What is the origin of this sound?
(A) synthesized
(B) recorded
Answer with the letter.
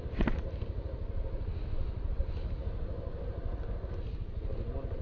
B